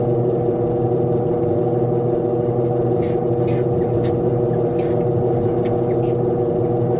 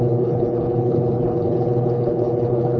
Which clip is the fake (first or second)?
second